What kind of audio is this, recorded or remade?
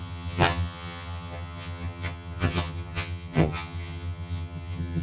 remade